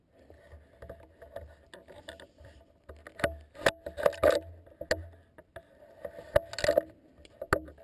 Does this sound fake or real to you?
real